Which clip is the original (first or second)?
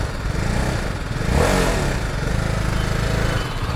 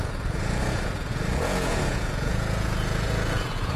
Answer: first